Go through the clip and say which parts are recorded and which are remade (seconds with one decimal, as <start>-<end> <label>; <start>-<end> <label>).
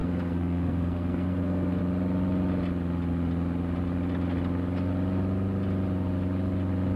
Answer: 0.0-1.8 remade; 1.8-7.0 recorded